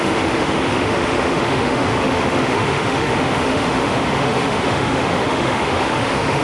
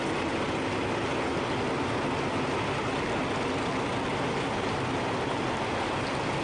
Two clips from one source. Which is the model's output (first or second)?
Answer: first